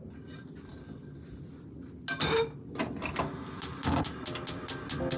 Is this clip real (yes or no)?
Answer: yes